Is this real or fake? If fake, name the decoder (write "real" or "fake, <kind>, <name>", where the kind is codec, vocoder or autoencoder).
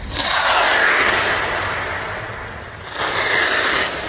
real